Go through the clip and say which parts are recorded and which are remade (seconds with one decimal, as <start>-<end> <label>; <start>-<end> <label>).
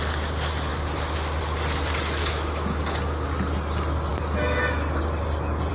0.0-2.2 recorded; 2.2-2.8 remade; 2.8-5.7 recorded